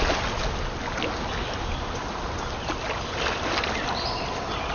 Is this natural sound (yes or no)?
yes